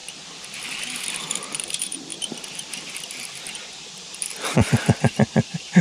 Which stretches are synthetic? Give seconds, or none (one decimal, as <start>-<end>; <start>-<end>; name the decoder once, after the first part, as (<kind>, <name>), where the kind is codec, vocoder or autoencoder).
1.3-5.8 (vocoder, BigVGAN v2)